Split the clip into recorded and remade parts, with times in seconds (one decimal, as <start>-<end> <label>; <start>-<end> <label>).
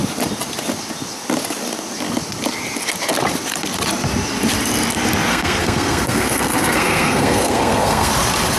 0.0-5.3 recorded; 5.3-8.1 remade; 8.1-8.6 recorded